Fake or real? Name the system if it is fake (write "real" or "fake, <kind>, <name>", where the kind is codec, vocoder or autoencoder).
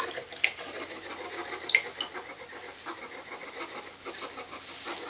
real